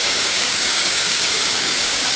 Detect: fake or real fake